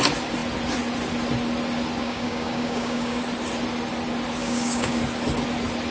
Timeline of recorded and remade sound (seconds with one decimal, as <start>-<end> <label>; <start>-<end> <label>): 0.0-2.0 recorded; 2.0-3.2 remade; 3.2-4.4 recorded; 4.4-5.0 remade; 5.0-5.9 recorded